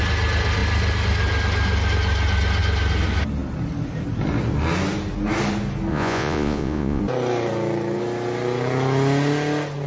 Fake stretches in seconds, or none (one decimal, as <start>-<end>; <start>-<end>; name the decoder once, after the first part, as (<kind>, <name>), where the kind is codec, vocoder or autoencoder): 5.9-7.0 (vocoder, Vocos)